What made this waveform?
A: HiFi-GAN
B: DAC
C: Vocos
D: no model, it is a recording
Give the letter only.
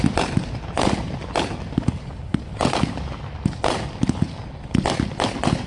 D